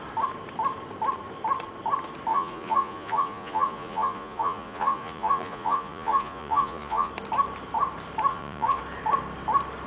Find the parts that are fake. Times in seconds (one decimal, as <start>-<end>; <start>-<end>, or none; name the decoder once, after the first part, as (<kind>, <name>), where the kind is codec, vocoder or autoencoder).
2.3-7.1 (vocoder, Vocos); 8.3-8.8